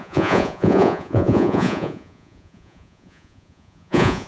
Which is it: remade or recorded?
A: remade